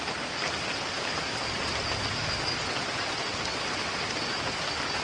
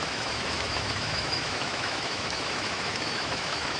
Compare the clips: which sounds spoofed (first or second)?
second